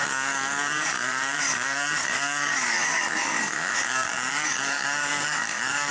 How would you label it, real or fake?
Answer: fake